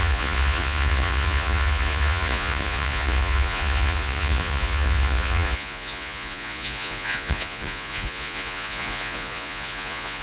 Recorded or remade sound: remade